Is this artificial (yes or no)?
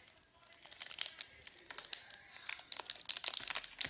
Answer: no